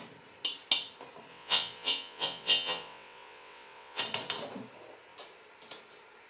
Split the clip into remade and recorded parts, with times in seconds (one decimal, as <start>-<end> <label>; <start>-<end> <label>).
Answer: 0.0-1.3 recorded; 1.3-4.0 remade; 4.0-6.3 recorded